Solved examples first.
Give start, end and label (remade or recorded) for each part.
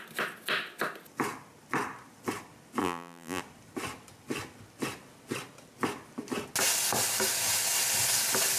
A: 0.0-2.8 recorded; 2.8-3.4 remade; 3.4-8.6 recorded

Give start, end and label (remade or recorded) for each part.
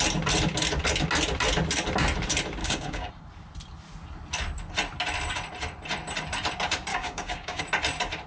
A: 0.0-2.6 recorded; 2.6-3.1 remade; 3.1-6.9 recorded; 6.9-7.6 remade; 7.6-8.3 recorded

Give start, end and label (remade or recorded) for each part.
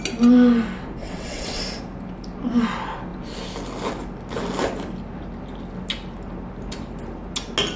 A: 0.0-1.0 recorded; 1.0-1.6 remade; 1.6-7.8 recorded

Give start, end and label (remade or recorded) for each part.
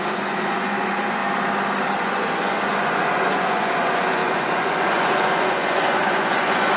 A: 0.0-1.2 remade; 1.2-2.0 recorded; 2.0-6.8 remade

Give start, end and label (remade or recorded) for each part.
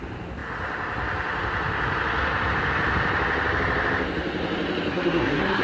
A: 0.0-4.9 recorded; 4.9-5.6 remade